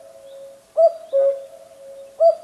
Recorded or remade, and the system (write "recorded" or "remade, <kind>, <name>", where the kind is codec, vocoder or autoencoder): recorded